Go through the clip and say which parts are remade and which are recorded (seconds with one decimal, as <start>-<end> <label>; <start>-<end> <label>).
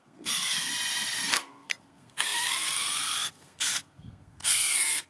0.0-0.7 remade; 0.7-1.3 recorded; 1.3-5.1 remade